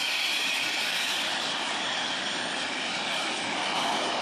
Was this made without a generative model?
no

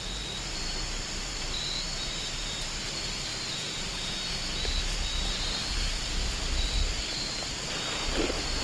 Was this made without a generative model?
yes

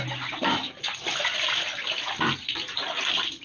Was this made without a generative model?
yes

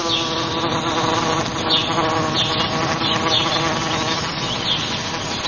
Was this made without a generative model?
yes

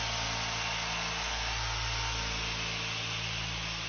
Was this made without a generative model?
yes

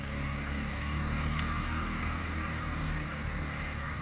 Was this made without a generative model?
no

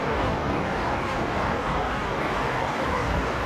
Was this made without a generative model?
no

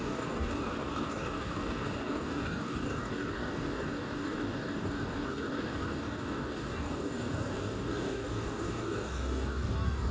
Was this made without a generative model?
no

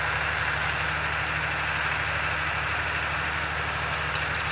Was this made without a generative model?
yes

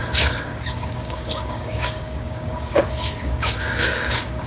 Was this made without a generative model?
no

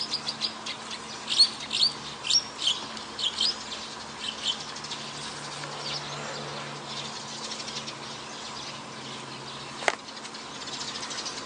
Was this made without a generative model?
yes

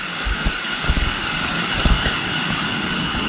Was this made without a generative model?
no